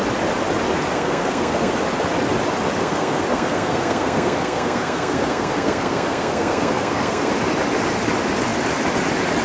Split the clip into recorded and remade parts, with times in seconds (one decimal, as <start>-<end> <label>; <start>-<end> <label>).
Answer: 0.0-0.9 recorded; 0.9-1.7 remade; 1.7-2.8 recorded; 2.8-7.3 remade; 7.3-9.4 recorded